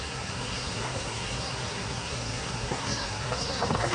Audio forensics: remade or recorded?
remade